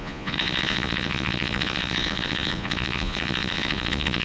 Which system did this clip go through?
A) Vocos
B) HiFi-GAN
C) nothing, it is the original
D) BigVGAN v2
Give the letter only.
A